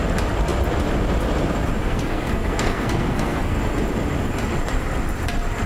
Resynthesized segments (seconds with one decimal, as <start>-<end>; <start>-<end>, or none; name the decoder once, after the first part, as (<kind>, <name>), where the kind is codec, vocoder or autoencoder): 1.8-3.6 (codec, SNAC)